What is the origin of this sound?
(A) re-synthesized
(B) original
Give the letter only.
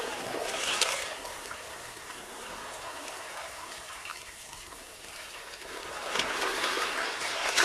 A